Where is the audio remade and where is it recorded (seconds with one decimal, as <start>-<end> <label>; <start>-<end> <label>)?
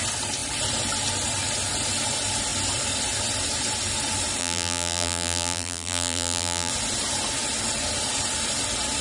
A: 0.0-4.4 recorded; 4.4-6.7 remade; 6.7-9.0 recorded